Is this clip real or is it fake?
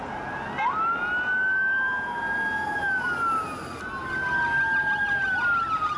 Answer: real